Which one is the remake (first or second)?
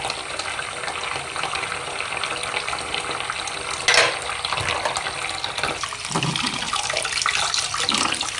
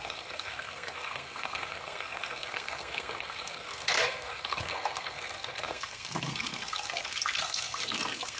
second